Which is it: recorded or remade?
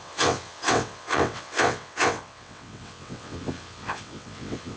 remade